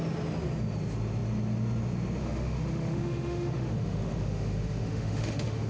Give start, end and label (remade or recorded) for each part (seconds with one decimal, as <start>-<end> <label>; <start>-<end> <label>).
0.0-2.2 recorded; 2.2-5.7 remade

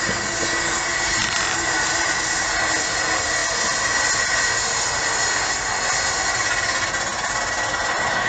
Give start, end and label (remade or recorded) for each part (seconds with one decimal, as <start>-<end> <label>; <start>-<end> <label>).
0.0-8.3 recorded

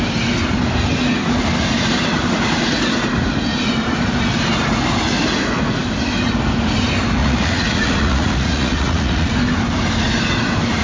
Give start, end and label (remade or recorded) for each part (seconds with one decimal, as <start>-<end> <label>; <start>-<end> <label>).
0.0-7.2 recorded; 7.2-9.3 remade; 9.3-10.8 recorded

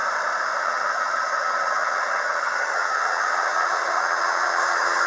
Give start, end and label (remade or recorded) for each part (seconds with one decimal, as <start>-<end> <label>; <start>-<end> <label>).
0.0-0.6 recorded; 0.6-5.1 remade

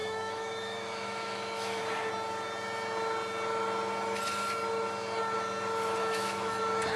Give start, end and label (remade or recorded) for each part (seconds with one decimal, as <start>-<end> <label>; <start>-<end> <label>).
0.0-1.8 remade; 1.8-6.0 recorded; 6.0-6.6 remade; 6.6-7.0 recorded

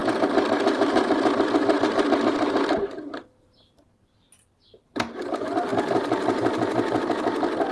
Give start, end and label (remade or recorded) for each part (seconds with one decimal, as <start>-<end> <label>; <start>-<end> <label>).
0.0-7.7 recorded

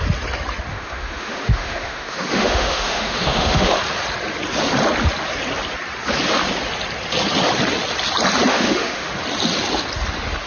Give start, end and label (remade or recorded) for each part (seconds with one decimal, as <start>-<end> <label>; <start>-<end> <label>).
0.0-0.7 recorded; 0.7-3.8 remade; 3.8-8.5 recorded; 8.5-9.1 remade; 9.1-10.5 recorded